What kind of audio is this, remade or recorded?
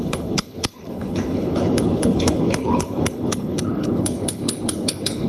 remade